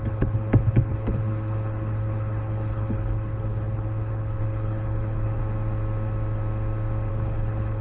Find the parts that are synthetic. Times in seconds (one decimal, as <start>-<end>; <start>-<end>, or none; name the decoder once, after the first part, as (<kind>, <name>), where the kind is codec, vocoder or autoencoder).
0.0-5.4 (codec, HILCodec); 7.1-7.8

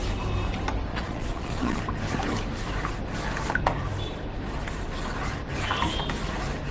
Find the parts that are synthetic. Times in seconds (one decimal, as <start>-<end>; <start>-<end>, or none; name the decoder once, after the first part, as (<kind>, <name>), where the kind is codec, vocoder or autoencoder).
0.9-1.8 (vocoder, Vocos)

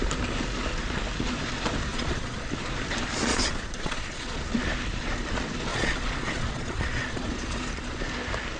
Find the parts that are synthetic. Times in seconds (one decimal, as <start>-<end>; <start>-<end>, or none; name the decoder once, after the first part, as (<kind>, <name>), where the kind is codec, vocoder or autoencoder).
1.9-2.5 (vocoder, Vocos); 3.3-4.5; 5.7-8.0

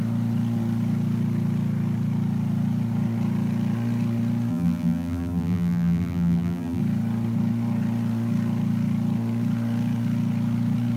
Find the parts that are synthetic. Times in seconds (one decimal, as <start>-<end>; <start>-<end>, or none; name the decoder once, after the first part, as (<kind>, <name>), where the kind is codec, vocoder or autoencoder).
4.5-6.8 (vocoder, BigVGAN v2)

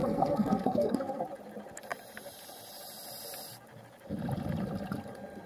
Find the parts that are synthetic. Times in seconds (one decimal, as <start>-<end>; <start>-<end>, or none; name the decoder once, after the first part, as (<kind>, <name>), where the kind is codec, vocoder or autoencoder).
0.0-1.2 (codec, SNAC)

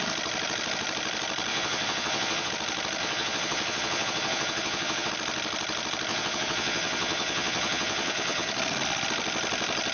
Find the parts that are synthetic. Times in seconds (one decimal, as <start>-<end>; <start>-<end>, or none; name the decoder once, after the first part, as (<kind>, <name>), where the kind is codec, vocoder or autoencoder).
1.5-2.5 (vocoder, Vocos); 3.0-5.1; 6.1-8.5

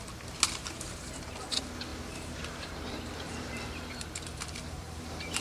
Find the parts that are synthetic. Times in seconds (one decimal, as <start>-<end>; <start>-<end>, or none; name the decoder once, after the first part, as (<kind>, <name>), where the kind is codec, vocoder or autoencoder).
0.6-1.5 (vocoder, BigVGAN v2); 1.9-5.4